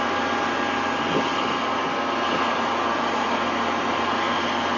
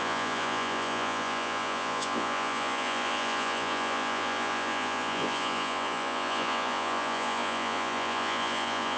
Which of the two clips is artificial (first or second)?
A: second